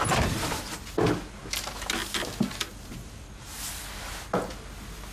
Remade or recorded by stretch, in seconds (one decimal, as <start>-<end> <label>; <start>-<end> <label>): 0.0-5.1 recorded